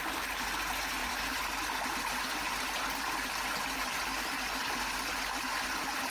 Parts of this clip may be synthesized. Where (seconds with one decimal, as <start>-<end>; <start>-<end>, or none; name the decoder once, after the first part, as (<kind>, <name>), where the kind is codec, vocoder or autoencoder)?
none